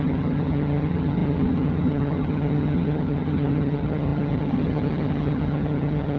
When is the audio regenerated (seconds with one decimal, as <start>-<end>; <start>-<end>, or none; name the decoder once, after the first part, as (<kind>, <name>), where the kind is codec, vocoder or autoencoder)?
0.0-6.2 (vocoder, HiFi-GAN)